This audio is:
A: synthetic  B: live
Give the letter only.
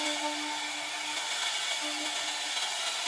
B